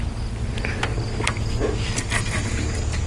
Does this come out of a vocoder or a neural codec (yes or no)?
no